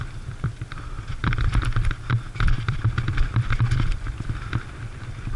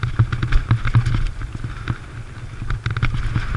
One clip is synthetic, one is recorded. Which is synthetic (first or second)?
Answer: first